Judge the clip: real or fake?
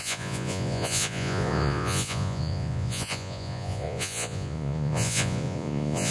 fake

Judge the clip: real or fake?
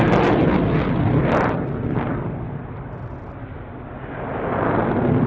real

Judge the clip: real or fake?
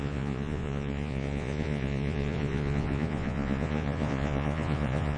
fake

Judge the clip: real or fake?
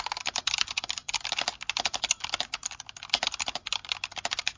real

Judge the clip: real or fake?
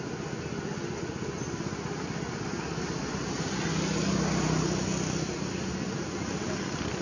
real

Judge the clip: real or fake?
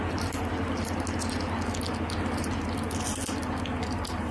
real